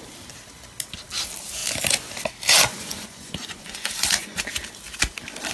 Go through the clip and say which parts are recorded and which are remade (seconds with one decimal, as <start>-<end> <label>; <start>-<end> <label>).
0.0-2.7 recorded; 2.7-4.4 remade; 4.4-5.5 recorded